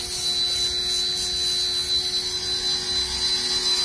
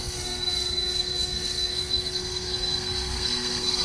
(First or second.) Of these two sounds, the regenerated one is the second